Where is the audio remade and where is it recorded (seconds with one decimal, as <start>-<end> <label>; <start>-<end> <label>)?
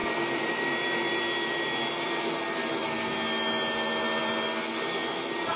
0.0-0.6 remade; 0.6-5.6 recorded